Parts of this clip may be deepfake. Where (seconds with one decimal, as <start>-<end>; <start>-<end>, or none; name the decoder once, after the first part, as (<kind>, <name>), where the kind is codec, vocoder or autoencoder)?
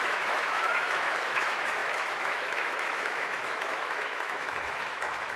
0.0-5.4 (autoencoder, DAC-VAE)